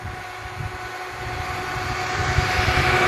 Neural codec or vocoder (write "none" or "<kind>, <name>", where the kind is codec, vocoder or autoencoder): none